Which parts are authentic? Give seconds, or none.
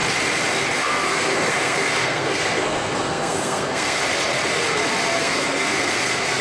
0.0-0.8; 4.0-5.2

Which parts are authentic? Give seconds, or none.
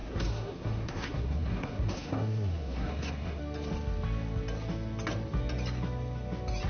3.4-6.7